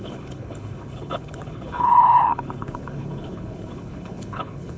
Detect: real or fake fake